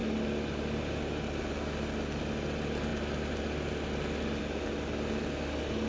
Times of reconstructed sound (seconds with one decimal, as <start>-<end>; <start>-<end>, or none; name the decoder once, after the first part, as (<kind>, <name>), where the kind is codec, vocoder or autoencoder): none